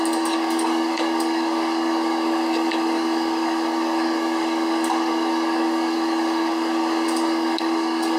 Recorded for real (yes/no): no